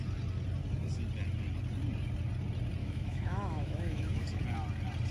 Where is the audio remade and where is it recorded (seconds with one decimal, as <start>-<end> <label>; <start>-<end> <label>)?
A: 0.0-2.8 recorded; 2.8-4.4 remade; 4.4-5.1 recorded